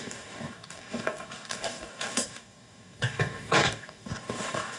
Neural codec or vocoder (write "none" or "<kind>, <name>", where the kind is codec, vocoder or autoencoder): codec, DAC